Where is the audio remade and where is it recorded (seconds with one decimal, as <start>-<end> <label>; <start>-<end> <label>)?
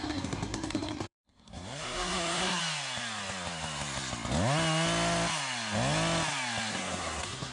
0.0-2.6 remade; 2.6-6.7 recorded; 6.7-7.5 remade